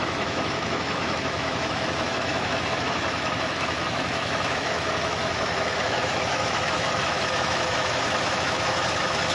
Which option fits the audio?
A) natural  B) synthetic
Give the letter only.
B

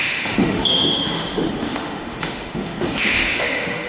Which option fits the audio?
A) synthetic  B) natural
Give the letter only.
A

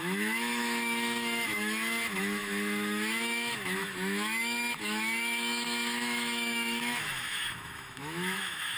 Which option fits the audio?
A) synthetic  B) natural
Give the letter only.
A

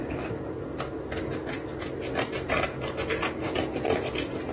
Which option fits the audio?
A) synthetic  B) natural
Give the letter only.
B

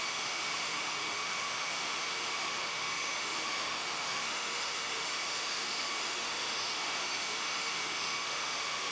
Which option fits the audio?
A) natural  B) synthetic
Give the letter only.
B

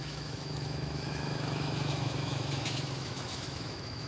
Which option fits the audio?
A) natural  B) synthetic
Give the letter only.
B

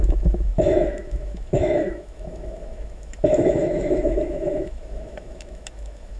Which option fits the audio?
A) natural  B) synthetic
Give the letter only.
B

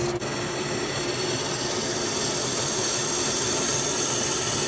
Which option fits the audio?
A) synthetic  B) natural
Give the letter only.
B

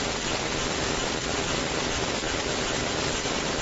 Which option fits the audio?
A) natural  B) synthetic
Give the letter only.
A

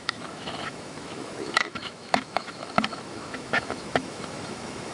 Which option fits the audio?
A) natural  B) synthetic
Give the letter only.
B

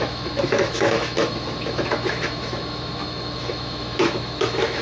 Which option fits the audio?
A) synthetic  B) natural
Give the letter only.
A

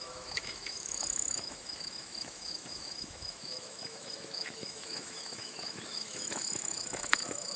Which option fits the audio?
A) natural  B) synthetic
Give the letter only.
B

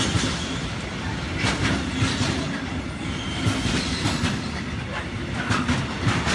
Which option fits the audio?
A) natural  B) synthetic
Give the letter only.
A